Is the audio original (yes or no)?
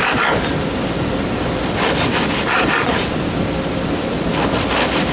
no